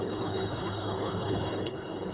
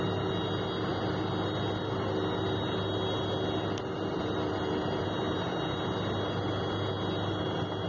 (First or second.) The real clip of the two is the second